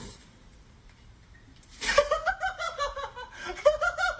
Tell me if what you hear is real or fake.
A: fake